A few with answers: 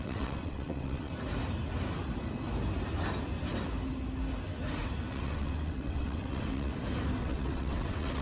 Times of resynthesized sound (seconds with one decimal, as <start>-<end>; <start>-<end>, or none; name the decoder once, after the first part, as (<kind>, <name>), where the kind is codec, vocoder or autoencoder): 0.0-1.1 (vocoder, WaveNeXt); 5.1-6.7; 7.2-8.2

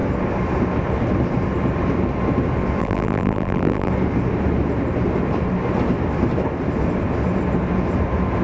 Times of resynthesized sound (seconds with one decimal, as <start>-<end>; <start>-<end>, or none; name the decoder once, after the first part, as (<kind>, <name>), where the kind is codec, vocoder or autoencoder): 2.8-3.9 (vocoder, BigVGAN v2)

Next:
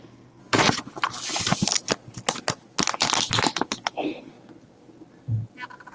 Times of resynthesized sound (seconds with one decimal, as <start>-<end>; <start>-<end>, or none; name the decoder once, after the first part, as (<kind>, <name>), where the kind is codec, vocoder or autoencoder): 0.0-0.4 (codec, SNAC); 3.9-4.3